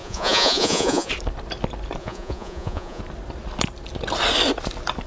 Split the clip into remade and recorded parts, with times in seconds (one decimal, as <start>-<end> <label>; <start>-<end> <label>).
0.0-1.1 remade; 1.1-2.0 recorded; 2.0-3.0 remade; 3.0-5.1 recorded